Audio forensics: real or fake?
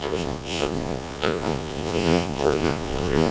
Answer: fake